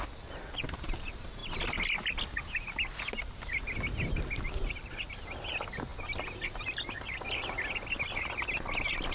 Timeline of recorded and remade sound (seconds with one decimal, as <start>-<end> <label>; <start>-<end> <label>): 0.0-9.1 recorded